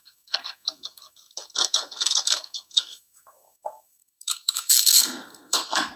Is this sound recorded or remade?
remade